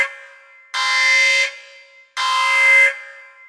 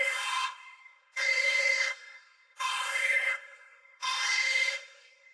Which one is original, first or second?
first